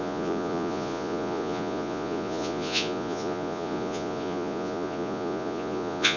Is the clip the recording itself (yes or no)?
no